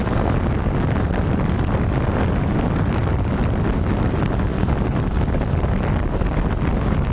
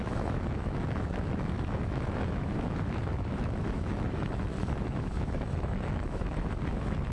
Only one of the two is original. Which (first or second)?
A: first